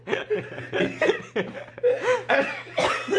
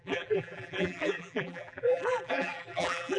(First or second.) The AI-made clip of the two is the second